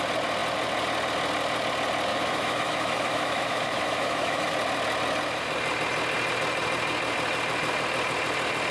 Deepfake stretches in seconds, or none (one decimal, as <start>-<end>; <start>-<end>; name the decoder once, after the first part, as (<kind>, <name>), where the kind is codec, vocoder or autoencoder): 2.1-4.5 (autoencoder, DAC-VAE)